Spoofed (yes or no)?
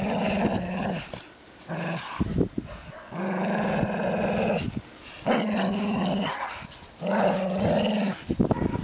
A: no